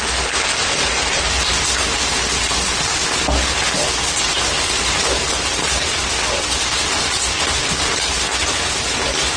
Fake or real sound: real